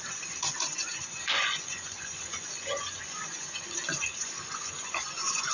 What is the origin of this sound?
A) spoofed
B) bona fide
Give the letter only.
A